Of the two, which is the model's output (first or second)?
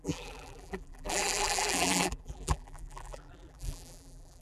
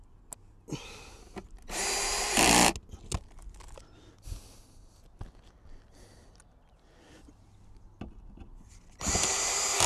first